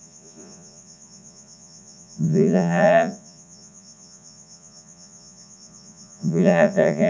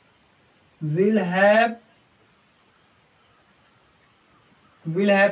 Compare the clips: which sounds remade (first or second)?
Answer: first